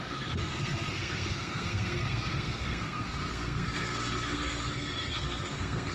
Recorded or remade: remade